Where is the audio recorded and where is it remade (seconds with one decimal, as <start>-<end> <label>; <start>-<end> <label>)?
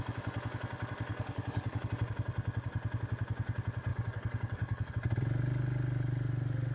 0.0-1.1 recorded; 1.1-1.9 remade; 1.9-3.9 recorded; 3.9-4.9 remade; 4.9-6.7 recorded